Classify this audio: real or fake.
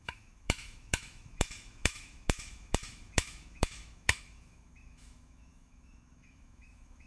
fake